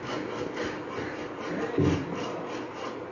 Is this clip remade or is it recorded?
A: recorded